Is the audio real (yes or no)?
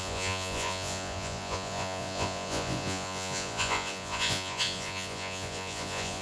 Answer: no